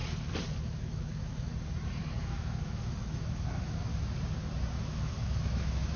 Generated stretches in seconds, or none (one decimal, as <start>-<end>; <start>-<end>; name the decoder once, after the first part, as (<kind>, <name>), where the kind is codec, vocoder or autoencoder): 0.6-1.5 (autoencoder, DAC-VAE); 2.2-3.9; 4.7-6.0